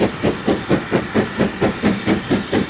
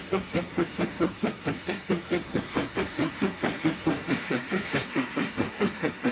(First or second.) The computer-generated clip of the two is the second